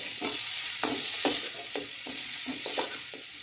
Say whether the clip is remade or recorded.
remade